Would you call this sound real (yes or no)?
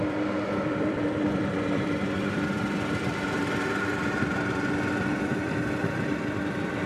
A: no